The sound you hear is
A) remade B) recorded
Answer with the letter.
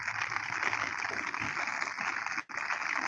B